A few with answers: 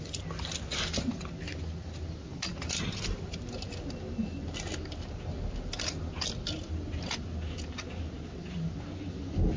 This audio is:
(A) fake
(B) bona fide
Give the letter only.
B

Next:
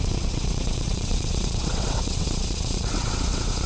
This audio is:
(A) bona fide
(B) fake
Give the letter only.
B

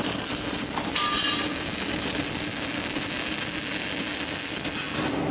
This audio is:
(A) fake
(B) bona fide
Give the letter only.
B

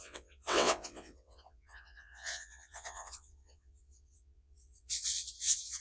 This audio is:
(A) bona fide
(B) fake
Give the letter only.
B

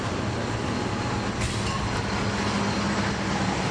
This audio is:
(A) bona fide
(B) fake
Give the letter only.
A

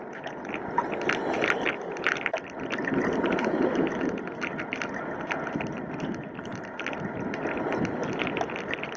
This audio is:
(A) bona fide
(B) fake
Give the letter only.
A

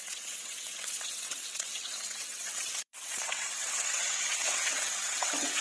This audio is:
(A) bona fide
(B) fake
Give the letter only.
B